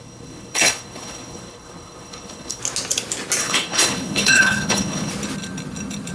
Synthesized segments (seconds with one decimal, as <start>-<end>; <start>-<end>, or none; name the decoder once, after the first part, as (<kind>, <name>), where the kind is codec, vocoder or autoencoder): 0.0-2.6 (codec, HILCodec); 3.4-5.1